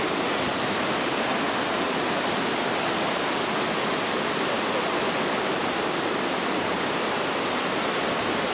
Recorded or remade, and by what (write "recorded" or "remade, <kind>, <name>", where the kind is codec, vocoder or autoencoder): recorded